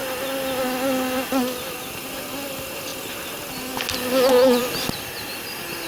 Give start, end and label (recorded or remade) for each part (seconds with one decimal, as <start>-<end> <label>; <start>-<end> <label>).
0.0-5.9 recorded